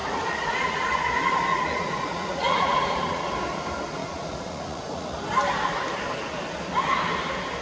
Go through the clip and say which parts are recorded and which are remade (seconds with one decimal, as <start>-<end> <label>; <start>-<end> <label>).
0.0-1.0 remade; 1.0-1.5 recorded; 1.5-3.2 remade; 3.2-4.0 recorded; 4.0-5.2 remade; 5.2-7.6 recorded